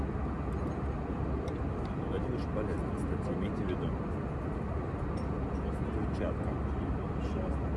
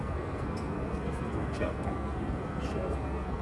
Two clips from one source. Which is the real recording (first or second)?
first